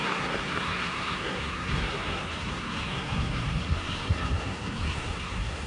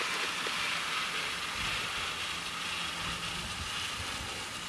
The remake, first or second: first